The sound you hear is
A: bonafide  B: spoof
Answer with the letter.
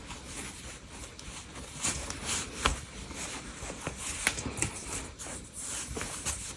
A